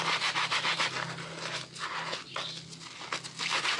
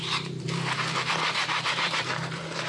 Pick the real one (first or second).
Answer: first